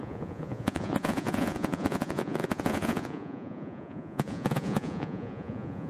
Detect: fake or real fake